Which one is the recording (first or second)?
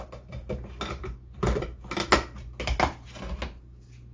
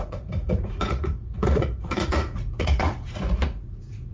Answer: first